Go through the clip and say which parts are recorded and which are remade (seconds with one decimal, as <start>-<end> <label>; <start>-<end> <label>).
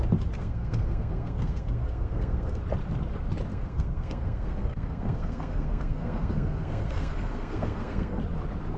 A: 0.0-0.4 recorded; 0.4-2.6 remade; 2.6-3.5 recorded; 3.5-8.2 remade; 8.2-8.8 recorded